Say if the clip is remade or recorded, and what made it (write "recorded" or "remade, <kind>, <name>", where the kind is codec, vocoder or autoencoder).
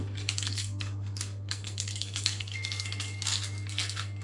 remade, codec, SNAC